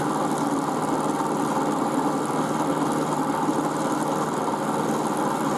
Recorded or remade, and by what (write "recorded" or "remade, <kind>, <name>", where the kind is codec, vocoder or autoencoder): recorded